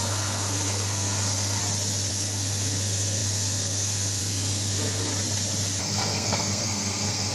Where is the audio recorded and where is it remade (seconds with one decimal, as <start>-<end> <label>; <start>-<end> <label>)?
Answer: 0.0-1.6 remade; 1.6-2.1 recorded; 2.1-5.1 remade; 5.1-5.8 recorded; 5.8-7.3 remade